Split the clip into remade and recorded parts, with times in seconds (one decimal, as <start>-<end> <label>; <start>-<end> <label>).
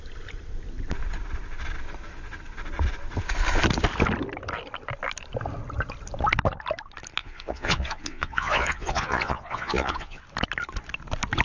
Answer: 0.0-7.2 recorded; 7.2-10.2 remade; 10.2-11.4 recorded